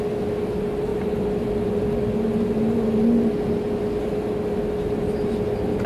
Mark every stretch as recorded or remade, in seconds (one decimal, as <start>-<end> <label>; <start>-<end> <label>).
0.0-5.9 recorded